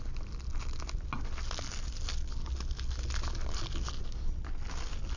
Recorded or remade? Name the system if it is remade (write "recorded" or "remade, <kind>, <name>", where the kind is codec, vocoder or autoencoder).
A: recorded